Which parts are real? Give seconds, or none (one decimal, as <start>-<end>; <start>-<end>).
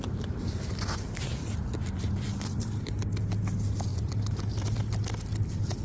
0.0-1.4; 2.0-3.9; 4.8-5.8